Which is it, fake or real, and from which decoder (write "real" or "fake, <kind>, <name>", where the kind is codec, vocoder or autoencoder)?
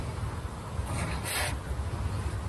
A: real